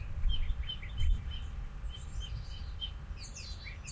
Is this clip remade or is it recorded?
recorded